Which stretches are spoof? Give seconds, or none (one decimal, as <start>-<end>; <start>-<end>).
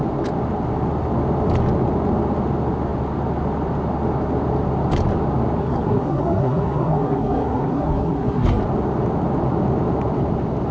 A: 5.6-8.6